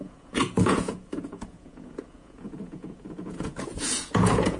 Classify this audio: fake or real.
fake